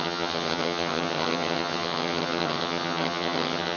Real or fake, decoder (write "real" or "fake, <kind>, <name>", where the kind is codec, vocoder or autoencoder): fake, vocoder, HiFi-GAN